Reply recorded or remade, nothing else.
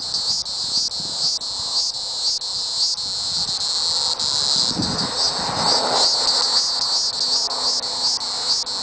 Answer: recorded